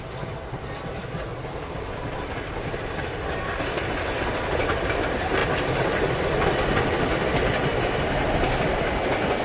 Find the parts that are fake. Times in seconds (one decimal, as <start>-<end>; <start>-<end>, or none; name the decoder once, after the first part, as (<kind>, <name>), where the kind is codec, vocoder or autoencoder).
none